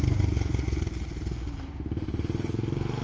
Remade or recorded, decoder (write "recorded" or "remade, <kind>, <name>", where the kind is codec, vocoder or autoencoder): recorded